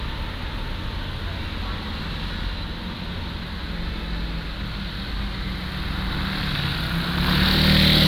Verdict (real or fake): real